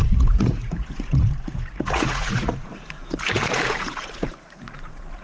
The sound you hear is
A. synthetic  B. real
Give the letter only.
A